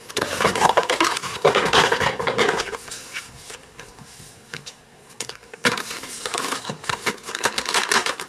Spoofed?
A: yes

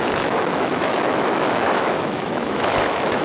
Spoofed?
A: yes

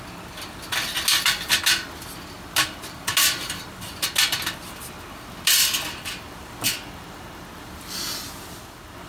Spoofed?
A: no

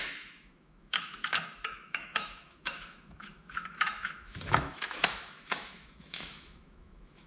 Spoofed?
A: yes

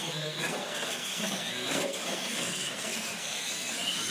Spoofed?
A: yes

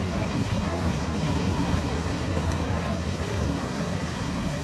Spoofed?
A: yes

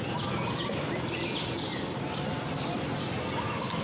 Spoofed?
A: no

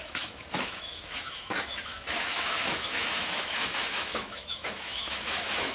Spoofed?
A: yes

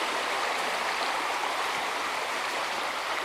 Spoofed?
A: no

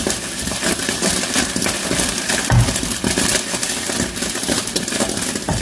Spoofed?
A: no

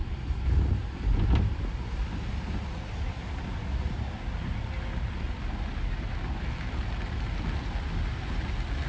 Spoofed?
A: no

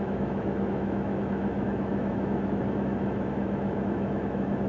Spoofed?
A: yes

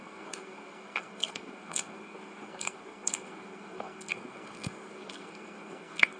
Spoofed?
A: yes